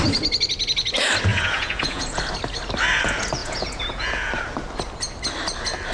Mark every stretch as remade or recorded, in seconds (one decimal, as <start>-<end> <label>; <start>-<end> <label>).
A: 0.0-1.3 recorded; 1.3-2.2 remade; 2.2-3.4 recorded; 3.4-4.3 remade; 4.3-5.9 recorded